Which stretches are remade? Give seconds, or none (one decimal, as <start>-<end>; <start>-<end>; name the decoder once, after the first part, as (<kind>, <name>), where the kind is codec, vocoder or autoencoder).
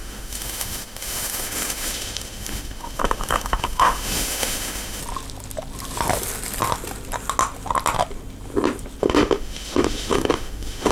0.0-5.0 (autoencoder, DAC-VAE); 9.0-10.9